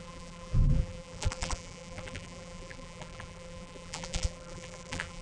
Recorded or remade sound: remade